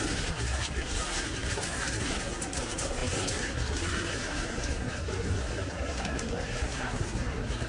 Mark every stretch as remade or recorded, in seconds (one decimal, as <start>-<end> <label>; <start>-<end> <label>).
0.0-7.7 remade